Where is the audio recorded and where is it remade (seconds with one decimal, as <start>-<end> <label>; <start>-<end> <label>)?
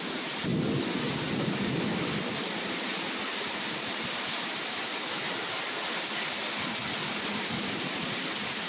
0.0-8.7 recorded